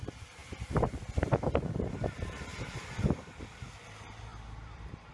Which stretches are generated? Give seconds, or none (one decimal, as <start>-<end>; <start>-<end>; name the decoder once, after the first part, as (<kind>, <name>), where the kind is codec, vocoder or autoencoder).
0.0-2.5 (vocoder, BigVGAN v2); 3.4-5.1